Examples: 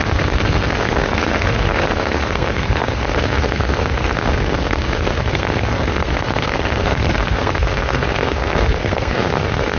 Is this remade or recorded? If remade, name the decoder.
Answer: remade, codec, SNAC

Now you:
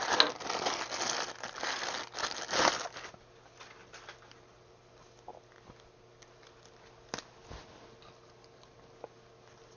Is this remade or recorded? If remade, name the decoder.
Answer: recorded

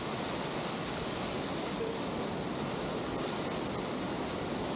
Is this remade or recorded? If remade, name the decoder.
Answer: recorded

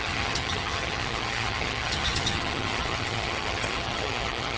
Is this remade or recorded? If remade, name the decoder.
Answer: remade, vocoder, HiFi-GAN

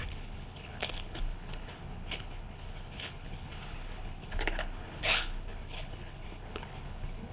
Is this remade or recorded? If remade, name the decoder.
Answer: remade, codec, HILCodec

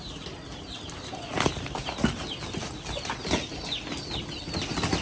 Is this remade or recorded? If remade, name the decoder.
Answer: recorded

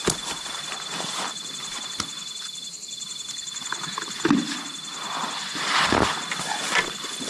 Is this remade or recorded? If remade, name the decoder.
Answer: recorded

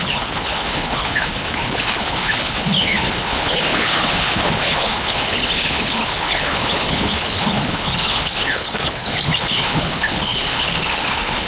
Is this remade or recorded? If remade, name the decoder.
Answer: remade, codec, HILCodec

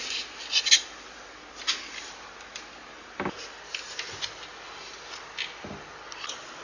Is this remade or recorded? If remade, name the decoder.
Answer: recorded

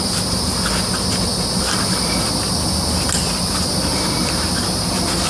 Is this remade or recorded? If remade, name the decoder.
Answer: recorded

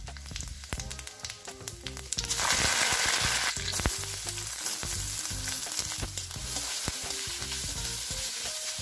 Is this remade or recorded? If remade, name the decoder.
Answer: recorded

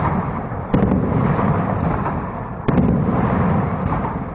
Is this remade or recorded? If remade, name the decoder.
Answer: recorded